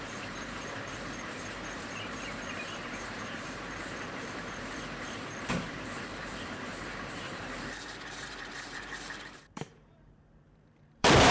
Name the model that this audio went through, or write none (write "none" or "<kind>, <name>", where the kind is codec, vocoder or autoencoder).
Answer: vocoder, BigVGAN v2